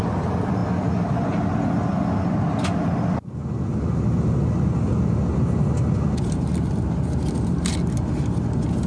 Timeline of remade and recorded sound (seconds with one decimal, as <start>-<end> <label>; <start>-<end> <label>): 0.0-8.9 recorded